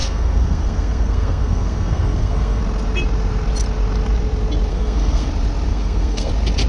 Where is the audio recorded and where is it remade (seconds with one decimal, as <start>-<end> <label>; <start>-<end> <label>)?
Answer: 0.0-2.6 remade; 2.6-4.7 recorded; 4.7-5.3 remade; 5.3-5.7 recorded; 5.7-6.3 remade; 6.3-6.7 recorded

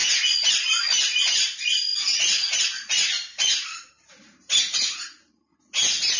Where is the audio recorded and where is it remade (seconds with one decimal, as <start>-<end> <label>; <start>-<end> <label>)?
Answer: 0.0-6.2 recorded

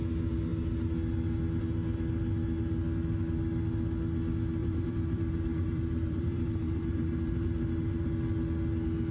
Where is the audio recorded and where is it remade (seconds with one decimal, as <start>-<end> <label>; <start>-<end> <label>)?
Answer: 0.0-4.6 recorded; 4.6-8.1 remade; 8.1-9.1 recorded

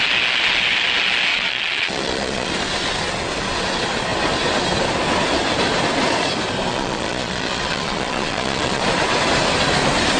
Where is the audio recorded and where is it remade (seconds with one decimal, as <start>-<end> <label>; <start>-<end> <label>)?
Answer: 0.0-1.3 recorded; 1.3-2.5 remade; 2.5-6.7 recorded; 6.7-8.8 remade; 8.8-10.2 recorded

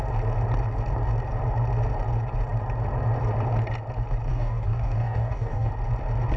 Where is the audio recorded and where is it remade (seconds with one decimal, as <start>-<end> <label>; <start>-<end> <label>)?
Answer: 0.0-4.3 recorded; 4.3-5.7 remade; 5.7-6.4 recorded

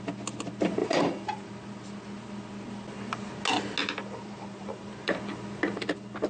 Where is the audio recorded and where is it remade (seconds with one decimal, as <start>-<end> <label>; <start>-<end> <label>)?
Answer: 0.0-0.8 recorded; 0.8-1.5 remade; 1.5-3.8 recorded; 3.8-5.1 remade; 5.1-6.3 recorded